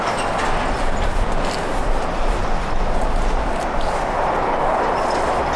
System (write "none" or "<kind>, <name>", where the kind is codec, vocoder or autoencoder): none